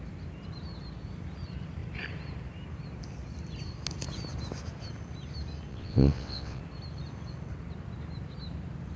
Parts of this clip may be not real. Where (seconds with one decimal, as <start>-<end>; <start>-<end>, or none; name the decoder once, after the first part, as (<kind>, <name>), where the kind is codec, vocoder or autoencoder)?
5.7-6.6 (vocoder, WaveNeXt)